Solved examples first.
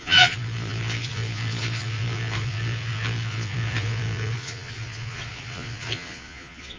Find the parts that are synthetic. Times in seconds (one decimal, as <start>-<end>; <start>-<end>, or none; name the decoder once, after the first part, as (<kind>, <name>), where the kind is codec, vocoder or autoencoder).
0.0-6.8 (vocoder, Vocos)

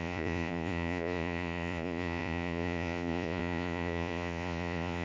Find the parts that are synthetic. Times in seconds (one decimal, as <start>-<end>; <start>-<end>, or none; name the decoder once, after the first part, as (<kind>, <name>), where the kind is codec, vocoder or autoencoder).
0.0-5.0 (vocoder, Vocos)

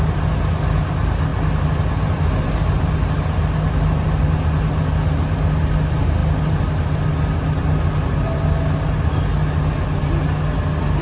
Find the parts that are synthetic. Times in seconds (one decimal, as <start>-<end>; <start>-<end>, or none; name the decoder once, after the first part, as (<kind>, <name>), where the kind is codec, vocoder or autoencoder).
none